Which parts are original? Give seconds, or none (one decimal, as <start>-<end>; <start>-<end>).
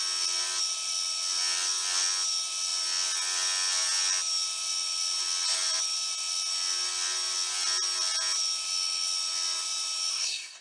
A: 0.0-10.1